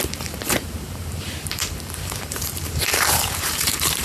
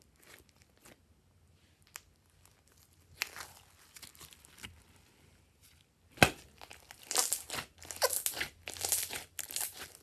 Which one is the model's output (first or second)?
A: first